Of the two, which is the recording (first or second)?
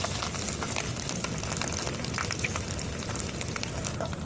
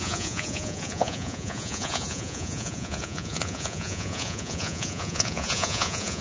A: first